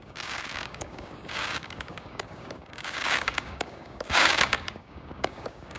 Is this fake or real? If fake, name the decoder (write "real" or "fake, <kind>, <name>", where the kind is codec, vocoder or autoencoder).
fake, codec, DAC